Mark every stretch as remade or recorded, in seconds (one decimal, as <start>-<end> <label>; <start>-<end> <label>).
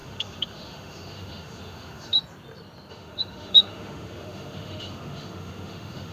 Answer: 0.0-2.2 remade; 2.2-2.9 recorded; 2.9-6.1 remade